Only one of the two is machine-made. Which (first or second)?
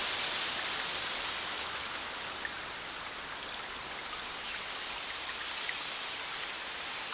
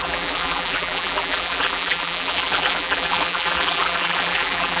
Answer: second